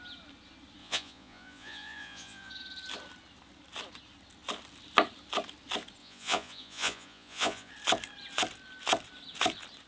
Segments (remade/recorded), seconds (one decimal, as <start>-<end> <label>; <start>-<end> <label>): 0.0-0.8 recorded; 0.8-2.5 remade; 2.5-6.0 recorded; 6.0-7.7 remade; 7.7-9.9 recorded